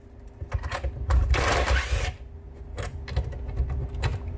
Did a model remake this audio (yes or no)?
no